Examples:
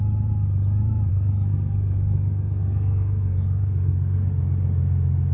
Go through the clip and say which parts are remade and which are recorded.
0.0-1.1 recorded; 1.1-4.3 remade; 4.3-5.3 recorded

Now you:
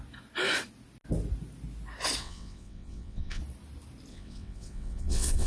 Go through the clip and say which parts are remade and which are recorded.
0.0-2.2 recorded; 2.2-3.4 remade; 3.4-4.1 recorded; 4.1-5.5 remade